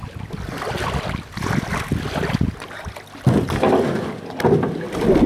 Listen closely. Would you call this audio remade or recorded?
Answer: recorded